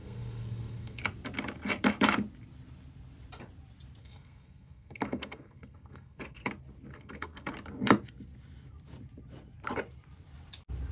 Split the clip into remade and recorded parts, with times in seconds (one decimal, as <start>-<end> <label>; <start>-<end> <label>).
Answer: 0.0-1.0 remade; 1.0-4.0 recorded; 4.0-6.5 remade; 6.5-6.9 recorded; 6.9-7.5 remade; 7.5-10.9 recorded